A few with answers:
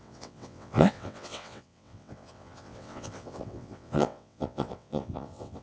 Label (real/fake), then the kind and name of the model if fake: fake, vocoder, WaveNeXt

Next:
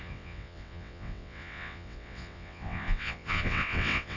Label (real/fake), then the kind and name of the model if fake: fake, vocoder, WaveNeXt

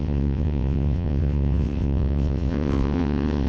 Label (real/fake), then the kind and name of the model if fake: fake, vocoder, WaveNeXt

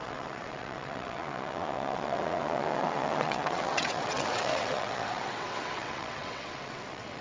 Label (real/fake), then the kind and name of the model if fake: fake, vocoder, WaveNeXt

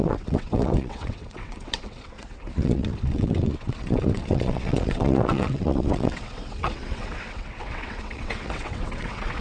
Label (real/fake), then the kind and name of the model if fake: fake, vocoder, WaveNeXt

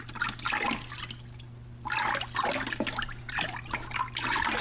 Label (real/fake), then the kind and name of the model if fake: real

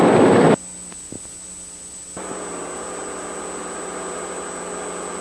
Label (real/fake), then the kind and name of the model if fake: real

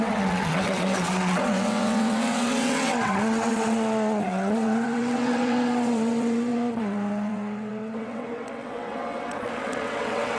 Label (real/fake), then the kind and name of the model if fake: fake, vocoder, WaveNeXt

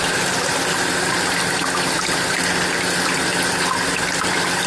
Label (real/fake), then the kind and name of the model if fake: real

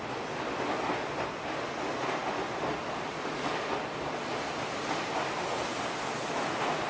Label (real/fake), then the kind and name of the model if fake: real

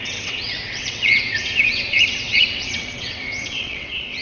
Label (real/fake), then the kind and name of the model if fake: fake, vocoder, WaveNeXt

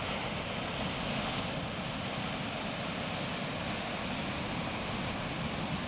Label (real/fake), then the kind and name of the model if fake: real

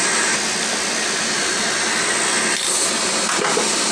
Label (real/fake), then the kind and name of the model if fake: real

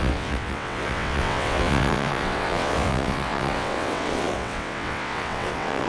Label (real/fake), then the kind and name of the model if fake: fake, vocoder, WaveNeXt